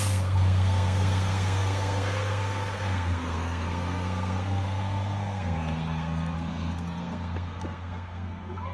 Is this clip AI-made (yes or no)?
yes